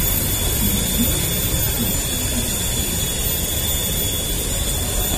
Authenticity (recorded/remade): recorded